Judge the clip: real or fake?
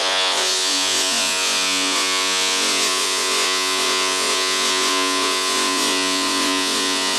fake